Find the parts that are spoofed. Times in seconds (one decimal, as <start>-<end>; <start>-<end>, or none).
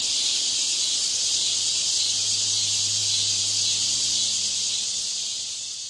none